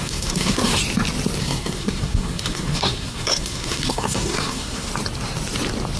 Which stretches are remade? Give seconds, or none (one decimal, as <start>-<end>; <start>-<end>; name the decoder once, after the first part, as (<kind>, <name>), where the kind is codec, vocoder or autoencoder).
0.0-0.8 (codec, SNAC); 1.4-4.9